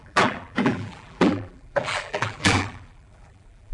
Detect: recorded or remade remade